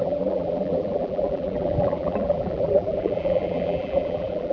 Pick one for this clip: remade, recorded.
remade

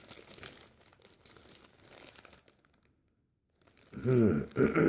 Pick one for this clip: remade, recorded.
recorded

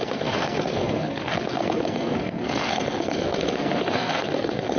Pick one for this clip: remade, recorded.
remade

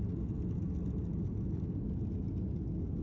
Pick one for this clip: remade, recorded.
recorded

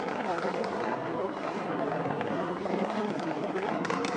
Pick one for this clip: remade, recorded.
remade